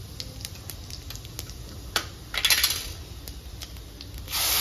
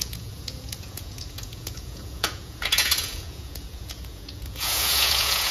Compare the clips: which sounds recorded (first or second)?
first